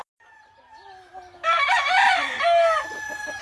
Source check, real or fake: real